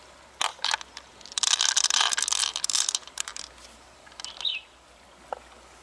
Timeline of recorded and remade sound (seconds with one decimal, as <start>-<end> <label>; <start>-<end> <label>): 0.0-0.5 recorded; 0.5-4.0 remade; 4.0-4.5 recorded; 4.5-5.2 remade; 5.2-5.8 recorded